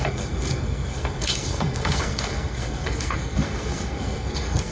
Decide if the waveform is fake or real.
fake